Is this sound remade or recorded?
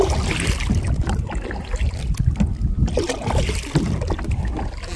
recorded